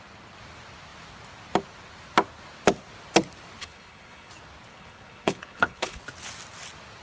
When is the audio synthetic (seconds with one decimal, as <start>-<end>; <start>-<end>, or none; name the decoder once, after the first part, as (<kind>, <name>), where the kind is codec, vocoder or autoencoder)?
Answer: 3.6-4.3 (codec, HILCodec); 4.7-6.0